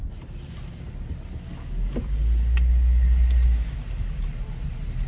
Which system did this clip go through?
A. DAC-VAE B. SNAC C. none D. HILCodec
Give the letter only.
C